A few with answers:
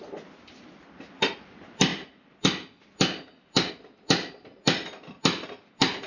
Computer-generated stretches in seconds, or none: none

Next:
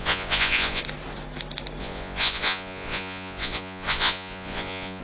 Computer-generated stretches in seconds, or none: 0.0-0.8 (vocoder, Vocos); 1.8-5.0

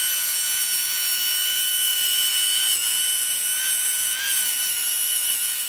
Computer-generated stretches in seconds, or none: 0.0-5.7 (vocoder, Vocos)

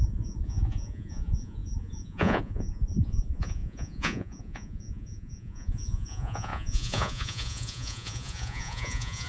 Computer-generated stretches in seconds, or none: 0.0-9.3 (vocoder, Vocos)

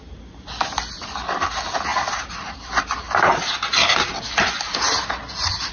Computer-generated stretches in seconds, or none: none